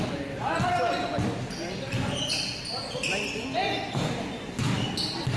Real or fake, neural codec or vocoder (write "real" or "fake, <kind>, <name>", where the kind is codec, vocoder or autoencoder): real